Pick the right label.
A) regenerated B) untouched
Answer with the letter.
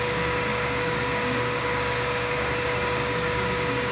A